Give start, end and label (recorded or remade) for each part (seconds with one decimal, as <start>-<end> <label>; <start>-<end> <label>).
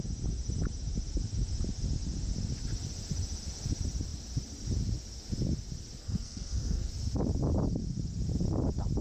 0.0-6.0 recorded; 6.0-6.9 remade; 6.9-9.0 recorded